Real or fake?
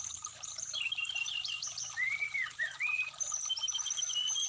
real